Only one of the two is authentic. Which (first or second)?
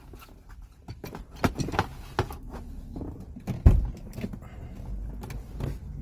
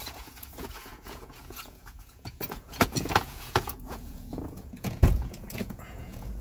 first